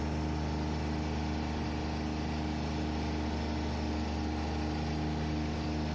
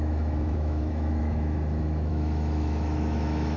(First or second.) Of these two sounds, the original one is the first